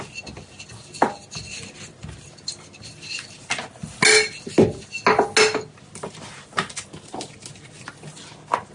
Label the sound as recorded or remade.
recorded